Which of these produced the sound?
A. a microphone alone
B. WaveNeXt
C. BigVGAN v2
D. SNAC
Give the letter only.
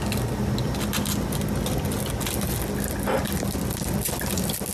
A